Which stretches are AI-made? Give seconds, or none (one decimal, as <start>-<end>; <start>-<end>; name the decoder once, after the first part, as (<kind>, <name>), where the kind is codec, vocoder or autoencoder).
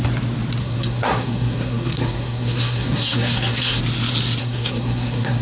0.6-3.8 (codec, SNAC); 4.4-5.4